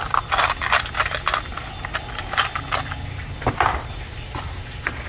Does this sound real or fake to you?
real